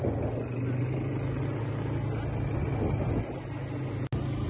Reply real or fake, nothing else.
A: real